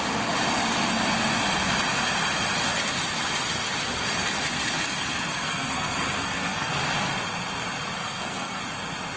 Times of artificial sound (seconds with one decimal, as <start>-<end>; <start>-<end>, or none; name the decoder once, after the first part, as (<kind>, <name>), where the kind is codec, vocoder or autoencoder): 5.3-6.7 (codec, SNAC); 8.0-8.6